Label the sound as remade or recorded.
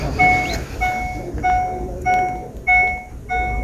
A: recorded